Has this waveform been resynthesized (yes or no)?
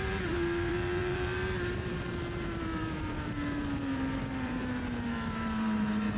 yes